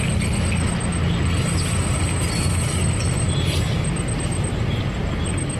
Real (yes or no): yes